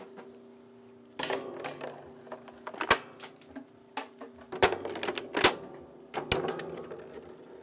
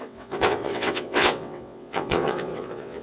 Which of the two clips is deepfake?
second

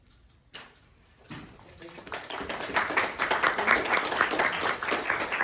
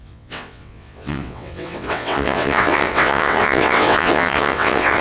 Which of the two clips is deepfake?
second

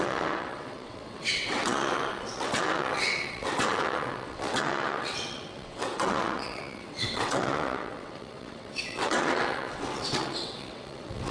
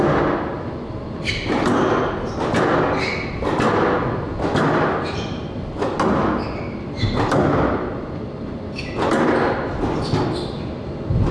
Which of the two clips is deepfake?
first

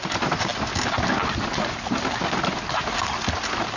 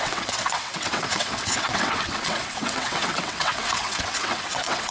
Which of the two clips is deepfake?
second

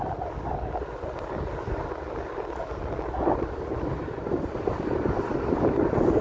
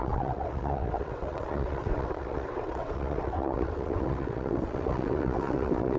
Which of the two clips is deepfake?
second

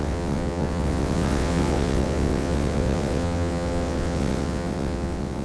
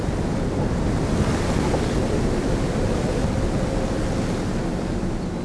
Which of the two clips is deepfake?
first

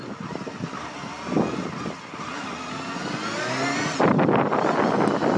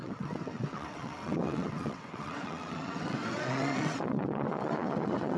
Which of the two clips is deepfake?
second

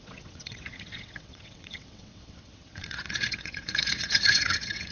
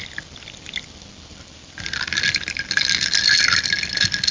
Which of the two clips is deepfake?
first